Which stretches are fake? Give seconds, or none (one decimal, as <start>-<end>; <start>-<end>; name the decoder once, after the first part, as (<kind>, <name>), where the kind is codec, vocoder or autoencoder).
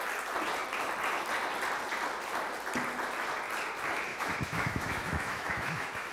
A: 4.1-6.1 (autoencoder, DAC-VAE)